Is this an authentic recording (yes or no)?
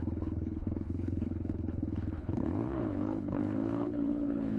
no